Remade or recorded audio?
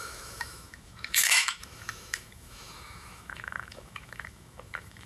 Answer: remade